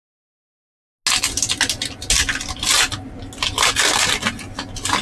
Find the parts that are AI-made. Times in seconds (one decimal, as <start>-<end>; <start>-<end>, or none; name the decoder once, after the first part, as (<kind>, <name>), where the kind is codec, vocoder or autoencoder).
none

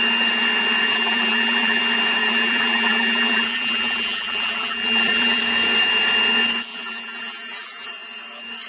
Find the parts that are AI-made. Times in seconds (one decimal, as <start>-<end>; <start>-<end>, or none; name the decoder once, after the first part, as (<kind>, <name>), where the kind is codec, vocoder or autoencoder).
0.9-1.8 (vocoder, BigVGAN v2); 2.2-5.4; 6.7-7.9

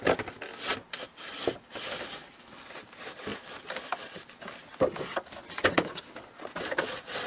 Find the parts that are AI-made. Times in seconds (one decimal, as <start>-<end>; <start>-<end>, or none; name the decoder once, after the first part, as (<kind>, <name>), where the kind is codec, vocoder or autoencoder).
none

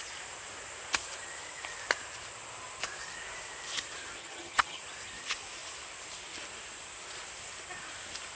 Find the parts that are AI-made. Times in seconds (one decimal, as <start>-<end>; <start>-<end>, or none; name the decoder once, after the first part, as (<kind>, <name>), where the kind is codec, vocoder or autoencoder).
4.2-4.8 (vocoder, HiFi-GAN)

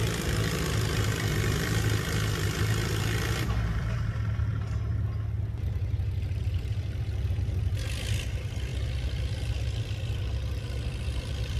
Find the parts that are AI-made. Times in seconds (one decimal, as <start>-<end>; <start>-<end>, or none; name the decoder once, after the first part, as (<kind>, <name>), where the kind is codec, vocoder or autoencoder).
0.0-4.5 (vocoder, BigVGAN v2); 6.2-11.6